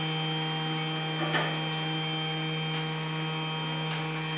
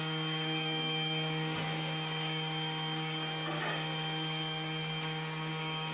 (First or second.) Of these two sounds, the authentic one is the first